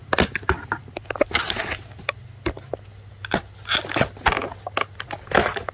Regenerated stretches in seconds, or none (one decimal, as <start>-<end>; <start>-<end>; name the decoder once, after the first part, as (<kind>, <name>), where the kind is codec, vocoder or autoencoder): none